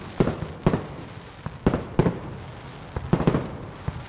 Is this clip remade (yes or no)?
no